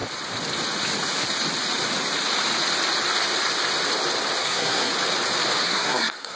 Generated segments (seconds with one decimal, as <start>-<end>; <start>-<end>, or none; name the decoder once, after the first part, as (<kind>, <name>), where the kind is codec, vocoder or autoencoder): 4.4-4.9 (codec, SNAC); 5.6-6.4